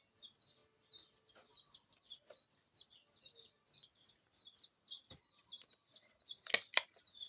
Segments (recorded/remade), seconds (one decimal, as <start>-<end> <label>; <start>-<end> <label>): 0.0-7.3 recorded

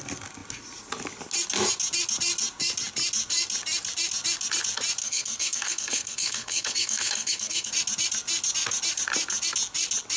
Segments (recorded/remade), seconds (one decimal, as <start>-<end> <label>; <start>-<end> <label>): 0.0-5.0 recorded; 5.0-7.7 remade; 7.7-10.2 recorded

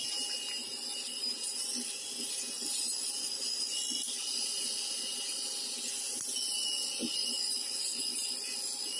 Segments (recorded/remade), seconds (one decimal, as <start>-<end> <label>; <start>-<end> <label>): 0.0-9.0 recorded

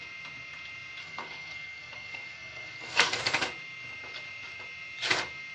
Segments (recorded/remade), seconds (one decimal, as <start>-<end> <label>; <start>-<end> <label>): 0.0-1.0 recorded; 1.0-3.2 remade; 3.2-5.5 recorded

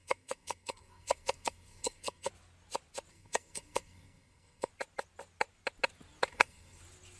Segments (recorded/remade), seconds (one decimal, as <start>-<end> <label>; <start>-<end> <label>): 0.0-2.3 remade; 2.3-3.1 recorded; 3.1-4.7 remade; 4.7-6.3 recorded; 6.3-6.8 remade; 6.8-7.2 recorded